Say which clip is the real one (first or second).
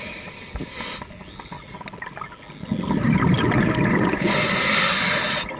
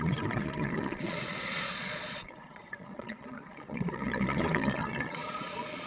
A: first